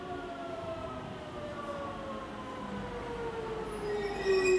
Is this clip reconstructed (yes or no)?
no